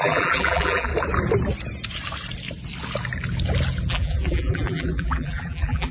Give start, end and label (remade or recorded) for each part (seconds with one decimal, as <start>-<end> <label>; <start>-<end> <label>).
0.0-0.9 remade; 0.9-3.9 recorded; 3.9-5.9 remade